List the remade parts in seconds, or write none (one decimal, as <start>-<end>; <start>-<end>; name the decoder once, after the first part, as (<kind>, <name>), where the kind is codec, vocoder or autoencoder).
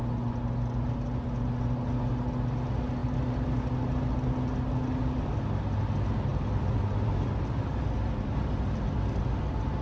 6.3-7.7 (vocoder, BigVGAN v2)